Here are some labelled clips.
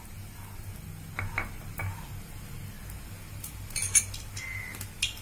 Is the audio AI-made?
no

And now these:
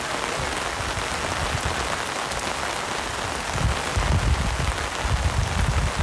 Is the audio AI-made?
no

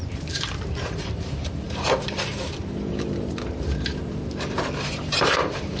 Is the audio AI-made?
yes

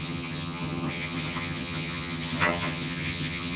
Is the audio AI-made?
yes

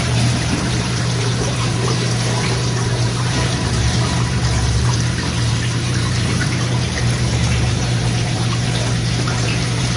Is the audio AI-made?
yes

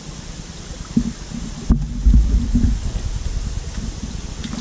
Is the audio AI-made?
no